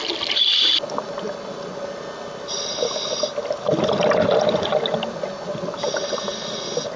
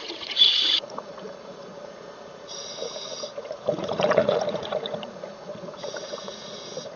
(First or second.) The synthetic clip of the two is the second